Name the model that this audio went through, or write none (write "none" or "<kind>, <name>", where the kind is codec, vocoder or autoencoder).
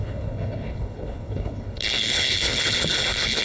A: codec, HILCodec